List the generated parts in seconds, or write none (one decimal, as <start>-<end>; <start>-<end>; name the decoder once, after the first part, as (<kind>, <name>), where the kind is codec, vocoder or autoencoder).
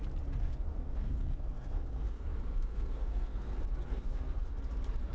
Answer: 0.4-3.5 (codec, SNAC); 3.9-4.5